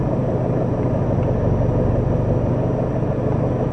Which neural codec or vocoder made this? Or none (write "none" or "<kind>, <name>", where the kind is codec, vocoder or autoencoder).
none